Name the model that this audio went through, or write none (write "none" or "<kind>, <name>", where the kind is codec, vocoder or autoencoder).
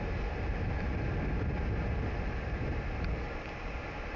none